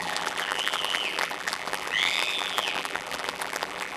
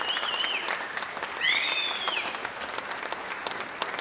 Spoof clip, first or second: first